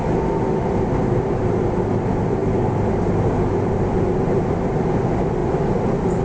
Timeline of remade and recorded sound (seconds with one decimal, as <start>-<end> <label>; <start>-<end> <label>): 0.0-6.2 recorded